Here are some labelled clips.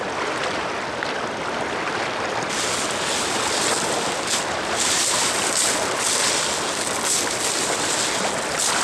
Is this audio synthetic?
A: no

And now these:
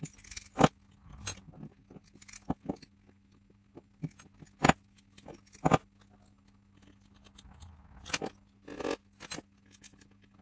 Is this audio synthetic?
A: no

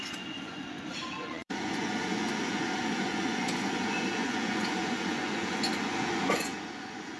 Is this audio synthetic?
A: yes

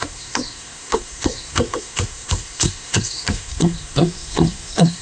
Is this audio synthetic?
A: yes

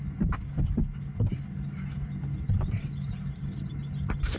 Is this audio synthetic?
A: no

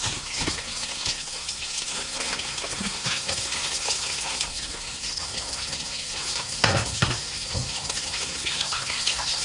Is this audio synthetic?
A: yes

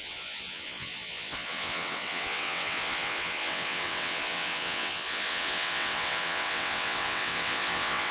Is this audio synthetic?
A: yes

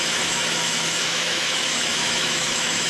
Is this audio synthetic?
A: yes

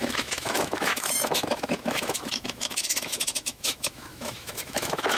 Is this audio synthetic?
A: yes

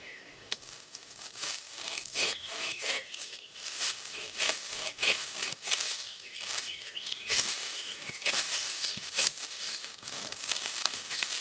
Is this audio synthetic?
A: yes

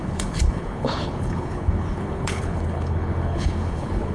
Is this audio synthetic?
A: yes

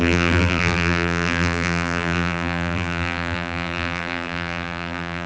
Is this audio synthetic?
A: yes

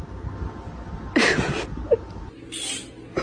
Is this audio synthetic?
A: no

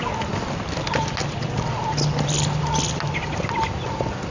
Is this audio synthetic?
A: no